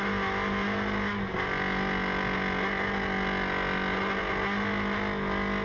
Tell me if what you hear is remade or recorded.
recorded